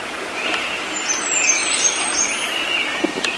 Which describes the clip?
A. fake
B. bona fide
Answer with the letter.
B